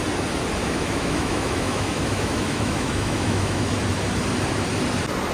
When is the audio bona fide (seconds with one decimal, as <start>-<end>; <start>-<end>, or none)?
0.0-0.6; 3.7-5.3